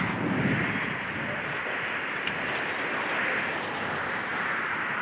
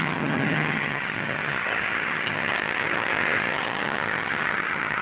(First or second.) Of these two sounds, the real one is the first